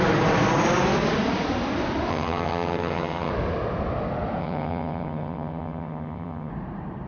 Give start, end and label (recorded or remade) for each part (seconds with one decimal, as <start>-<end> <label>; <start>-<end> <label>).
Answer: 0.0-2.1 recorded; 2.1-3.3 remade; 3.3-4.4 recorded; 4.4-6.5 remade; 6.5-7.1 recorded